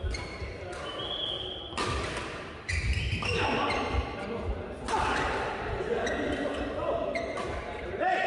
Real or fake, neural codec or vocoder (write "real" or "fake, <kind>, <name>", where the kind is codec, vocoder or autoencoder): real